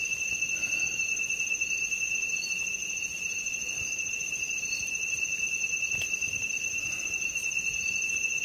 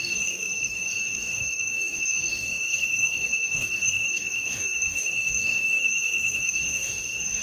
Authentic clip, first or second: first